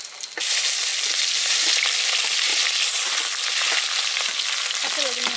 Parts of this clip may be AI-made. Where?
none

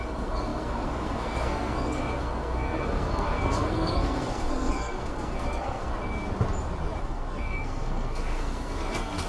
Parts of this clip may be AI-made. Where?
0.0-5.9 (codec, SNAC); 7.0-9.3

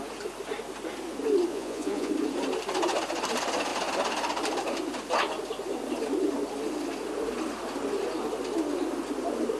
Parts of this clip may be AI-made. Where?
1.5-2.1 (vocoder, Vocos)